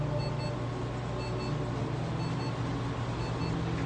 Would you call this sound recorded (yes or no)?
yes